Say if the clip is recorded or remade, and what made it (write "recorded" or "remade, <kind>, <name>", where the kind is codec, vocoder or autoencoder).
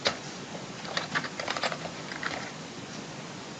remade, vocoder, Vocos